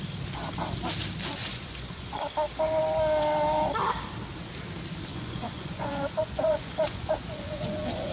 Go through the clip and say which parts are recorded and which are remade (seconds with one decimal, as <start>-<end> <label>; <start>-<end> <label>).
0.0-1.5 recorded; 1.5-2.1 remade; 2.1-5.1 recorded; 5.1-8.1 remade